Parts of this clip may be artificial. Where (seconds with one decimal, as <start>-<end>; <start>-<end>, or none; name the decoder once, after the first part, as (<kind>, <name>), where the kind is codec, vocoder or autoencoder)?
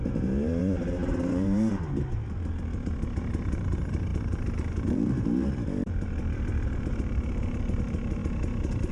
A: 0.0-8.2 (vocoder, BigVGAN v2)